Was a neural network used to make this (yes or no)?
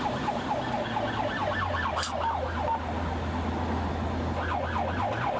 no